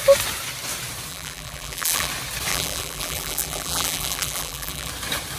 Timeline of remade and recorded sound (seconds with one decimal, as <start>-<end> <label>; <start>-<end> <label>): 0.0-1.1 recorded; 1.1-2.1 remade; 2.1-2.5 recorded; 2.5-4.9 remade; 4.9-5.4 recorded